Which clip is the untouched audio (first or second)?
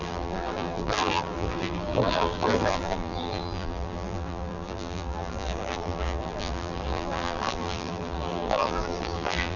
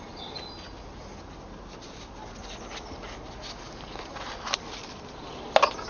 second